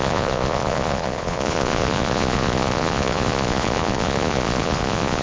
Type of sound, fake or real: fake